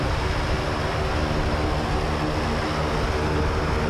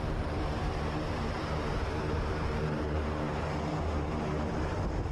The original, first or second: first